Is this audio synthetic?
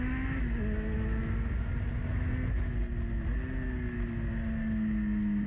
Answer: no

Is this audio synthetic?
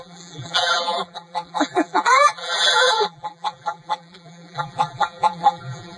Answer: yes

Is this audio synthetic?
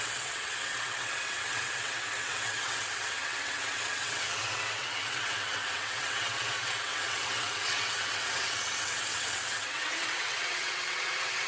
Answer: yes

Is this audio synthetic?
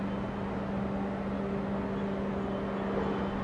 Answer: no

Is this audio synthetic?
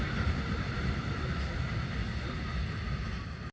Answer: no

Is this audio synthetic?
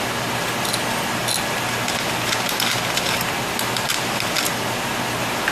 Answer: no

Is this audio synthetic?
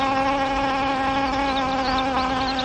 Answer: no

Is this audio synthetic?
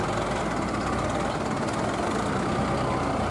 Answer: no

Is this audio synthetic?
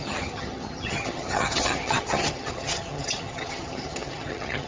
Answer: yes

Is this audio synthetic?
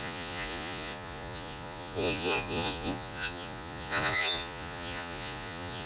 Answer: yes